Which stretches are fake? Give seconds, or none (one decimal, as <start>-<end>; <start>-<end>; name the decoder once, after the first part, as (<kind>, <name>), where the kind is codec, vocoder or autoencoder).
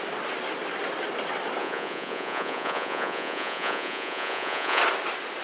1.6-4.8 (vocoder, Vocos)